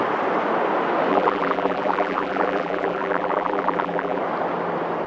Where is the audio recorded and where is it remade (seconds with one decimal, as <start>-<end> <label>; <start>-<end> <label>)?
0.0-1.1 recorded; 1.1-4.2 remade; 4.2-5.1 recorded